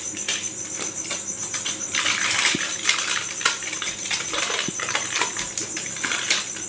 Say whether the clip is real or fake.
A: real